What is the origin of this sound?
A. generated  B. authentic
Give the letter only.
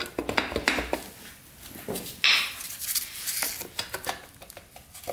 B